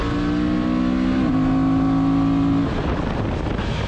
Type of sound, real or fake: real